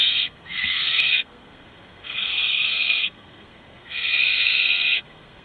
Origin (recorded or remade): remade